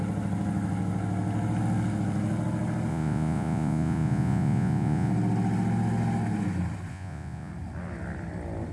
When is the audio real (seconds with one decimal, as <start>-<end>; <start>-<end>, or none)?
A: 0.0-2.9; 5.1-6.9; 7.5-8.7